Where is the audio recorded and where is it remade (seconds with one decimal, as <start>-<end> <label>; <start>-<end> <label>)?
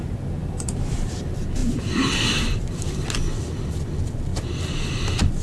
0.0-0.4 recorded; 0.4-1.1 remade; 1.1-1.6 recorded; 1.6-3.0 remade; 3.0-4.3 recorded; 4.3-5.0 remade; 5.0-5.4 recorded